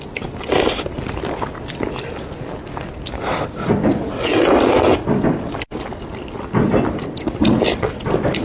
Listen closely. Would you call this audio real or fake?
real